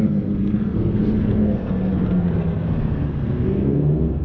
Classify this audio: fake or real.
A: fake